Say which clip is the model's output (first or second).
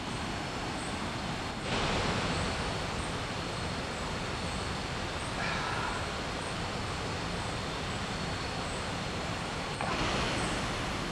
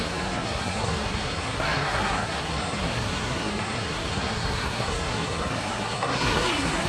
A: second